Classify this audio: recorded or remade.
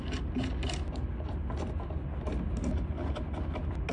recorded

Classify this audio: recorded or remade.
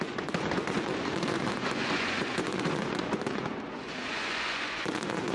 remade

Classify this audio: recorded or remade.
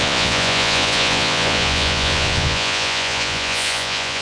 remade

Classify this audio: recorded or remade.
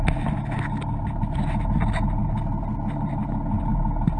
recorded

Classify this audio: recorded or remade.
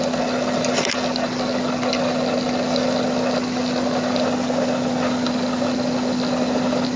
recorded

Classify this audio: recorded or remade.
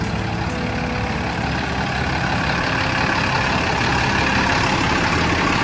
recorded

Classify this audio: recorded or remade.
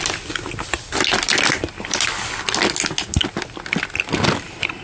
recorded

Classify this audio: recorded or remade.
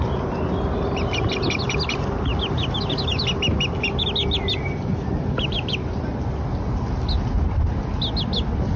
recorded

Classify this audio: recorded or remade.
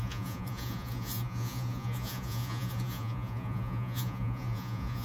remade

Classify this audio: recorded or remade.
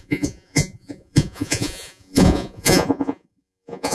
remade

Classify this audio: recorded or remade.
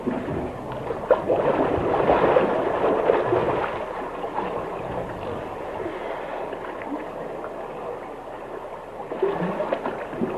recorded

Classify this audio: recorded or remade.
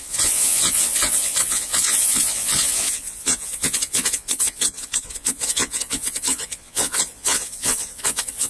remade